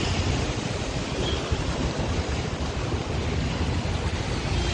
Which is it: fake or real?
real